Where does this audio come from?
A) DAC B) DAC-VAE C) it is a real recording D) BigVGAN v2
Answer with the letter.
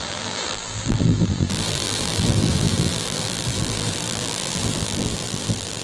D